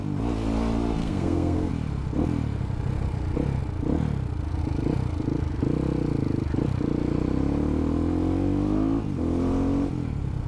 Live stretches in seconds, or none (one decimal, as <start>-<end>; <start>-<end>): 0.0-1.0; 1.7-10.5